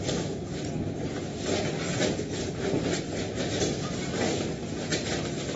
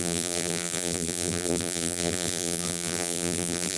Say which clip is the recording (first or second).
first